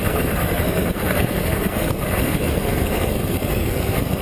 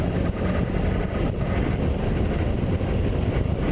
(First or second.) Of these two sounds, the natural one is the second